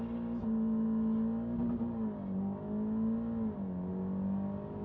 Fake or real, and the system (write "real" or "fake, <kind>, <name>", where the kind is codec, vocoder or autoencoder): real